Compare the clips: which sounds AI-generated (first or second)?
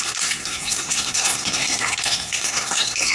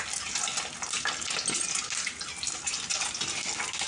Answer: first